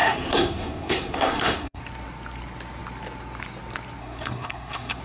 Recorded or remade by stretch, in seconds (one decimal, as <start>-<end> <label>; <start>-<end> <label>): 0.0-1.8 remade; 1.8-4.0 recorded; 4.0-5.0 remade